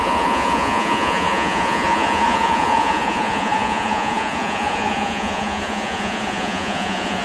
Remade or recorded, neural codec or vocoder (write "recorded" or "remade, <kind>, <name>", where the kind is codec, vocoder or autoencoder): remade, vocoder, Vocos